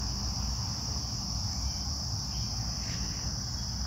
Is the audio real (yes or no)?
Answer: yes